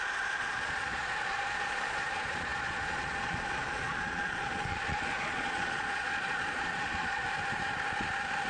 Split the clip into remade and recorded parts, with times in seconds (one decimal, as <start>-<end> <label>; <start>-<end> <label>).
0.0-7.2 remade; 7.2-8.5 recorded